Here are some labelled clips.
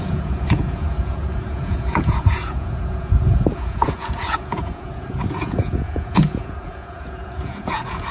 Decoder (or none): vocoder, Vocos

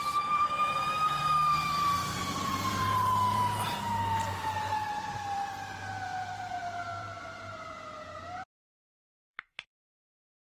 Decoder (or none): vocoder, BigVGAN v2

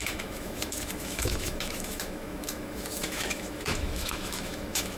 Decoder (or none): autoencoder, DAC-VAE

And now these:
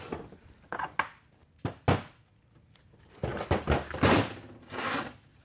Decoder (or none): none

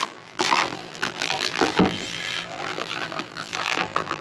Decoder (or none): vocoder, BigVGAN v2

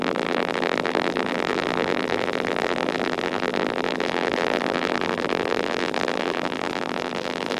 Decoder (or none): vocoder, BigVGAN v2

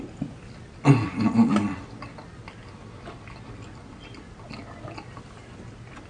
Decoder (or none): none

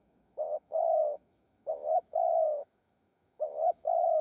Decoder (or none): autoencoder, DAC-VAE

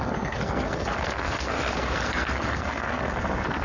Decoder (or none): codec, SNAC